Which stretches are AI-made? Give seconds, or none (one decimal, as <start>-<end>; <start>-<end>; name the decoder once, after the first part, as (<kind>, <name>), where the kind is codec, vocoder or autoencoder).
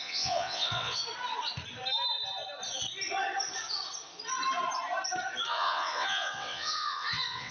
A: 0.0-1.0 (vocoder, WaveNeXt); 5.5-7.5